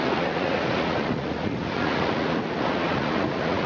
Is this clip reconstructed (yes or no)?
yes